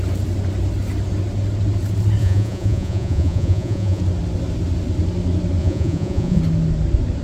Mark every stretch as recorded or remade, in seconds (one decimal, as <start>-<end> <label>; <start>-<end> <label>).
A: 0.0-2.2 recorded; 2.2-4.0 remade; 4.0-5.6 recorded; 5.6-6.4 remade; 6.4-7.2 recorded